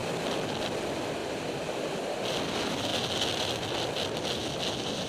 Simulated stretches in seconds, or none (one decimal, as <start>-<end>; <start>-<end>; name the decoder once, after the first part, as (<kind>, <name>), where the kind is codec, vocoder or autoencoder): none